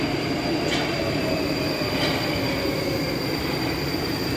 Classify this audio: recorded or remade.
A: recorded